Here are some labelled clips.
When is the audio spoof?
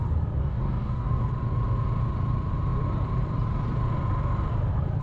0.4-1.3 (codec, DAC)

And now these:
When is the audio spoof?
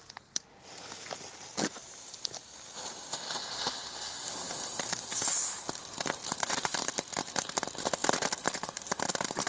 6.2-6.9 (vocoder, BigVGAN v2); 8.0-9.5